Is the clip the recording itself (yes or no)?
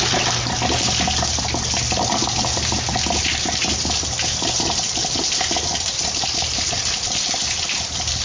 yes